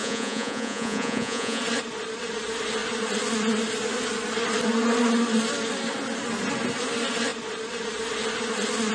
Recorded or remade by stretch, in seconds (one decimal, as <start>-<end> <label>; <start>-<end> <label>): 0.0-1.6 remade; 1.6-8.9 recorded

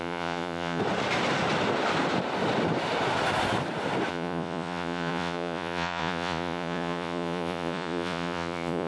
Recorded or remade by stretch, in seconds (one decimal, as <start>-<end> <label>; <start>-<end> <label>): 0.0-0.8 remade; 0.8-4.1 recorded; 4.1-8.9 remade

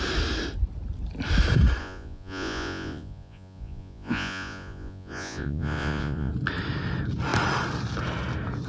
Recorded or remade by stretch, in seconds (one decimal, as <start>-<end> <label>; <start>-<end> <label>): 0.0-1.8 recorded; 1.8-6.3 remade; 6.3-8.7 recorded

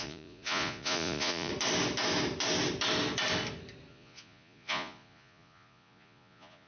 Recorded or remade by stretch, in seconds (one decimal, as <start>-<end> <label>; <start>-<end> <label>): 0.0-1.5 remade; 1.5-3.9 recorded; 3.9-6.7 remade

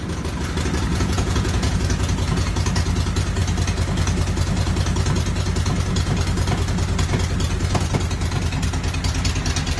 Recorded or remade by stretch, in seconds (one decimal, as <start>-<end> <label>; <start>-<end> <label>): 0.0-0.9 recorded; 0.9-1.7 remade; 1.7-9.8 recorded

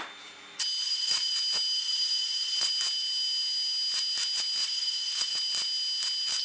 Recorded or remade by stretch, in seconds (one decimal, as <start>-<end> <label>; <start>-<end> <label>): 0.0-0.8 recorded; 0.8-1.3 remade; 1.3-1.8 recorded; 1.8-2.7 remade; 2.7-4.6 recorded; 4.6-5.3 remade; 5.3-6.4 recorded